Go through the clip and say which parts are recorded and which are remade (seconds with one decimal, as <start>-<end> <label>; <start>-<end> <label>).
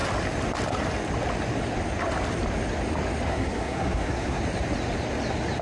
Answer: 0.0-3.3 recorded; 3.3-4.4 remade; 4.4-5.6 recorded